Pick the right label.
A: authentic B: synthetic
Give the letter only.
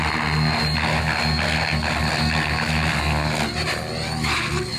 A